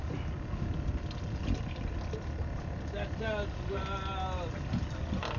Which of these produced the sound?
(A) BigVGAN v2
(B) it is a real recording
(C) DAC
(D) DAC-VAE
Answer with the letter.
B